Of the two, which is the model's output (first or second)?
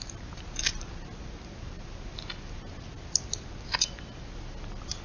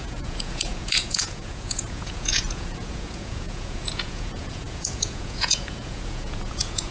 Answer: second